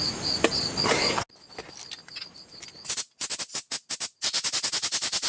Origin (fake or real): real